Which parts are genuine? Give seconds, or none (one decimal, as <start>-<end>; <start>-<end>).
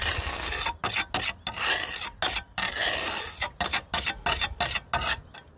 0.0-5.6